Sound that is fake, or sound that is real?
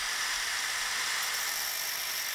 real